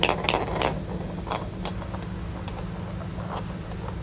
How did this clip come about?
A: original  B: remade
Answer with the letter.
A